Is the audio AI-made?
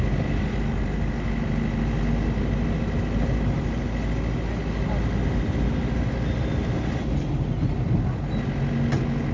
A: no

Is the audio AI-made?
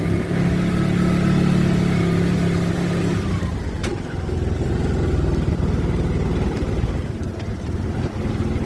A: no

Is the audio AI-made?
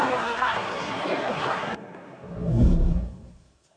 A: yes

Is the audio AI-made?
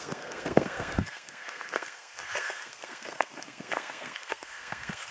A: yes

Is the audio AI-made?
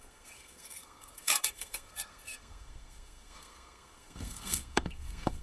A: yes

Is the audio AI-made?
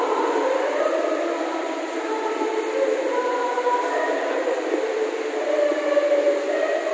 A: no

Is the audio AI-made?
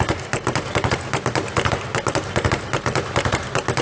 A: no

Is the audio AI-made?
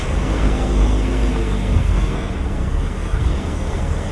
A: yes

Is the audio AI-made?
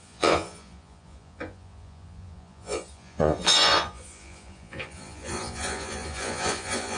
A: yes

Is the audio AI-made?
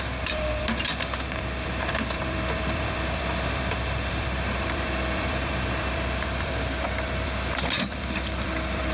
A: yes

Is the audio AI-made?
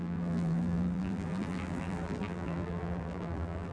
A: yes